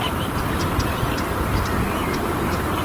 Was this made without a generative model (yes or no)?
no